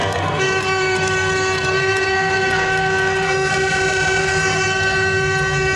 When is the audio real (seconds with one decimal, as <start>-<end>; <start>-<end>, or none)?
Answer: 3.5-4.2